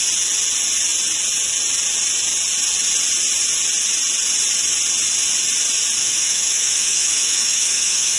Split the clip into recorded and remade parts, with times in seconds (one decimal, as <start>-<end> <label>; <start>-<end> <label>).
0.0-6.0 recorded; 6.0-8.2 remade